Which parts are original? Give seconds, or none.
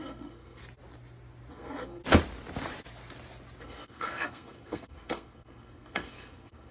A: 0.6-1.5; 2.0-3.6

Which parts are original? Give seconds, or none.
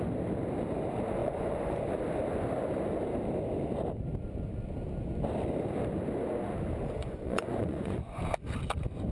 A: 0.0-1.2; 1.8-7.0; 8.2-9.1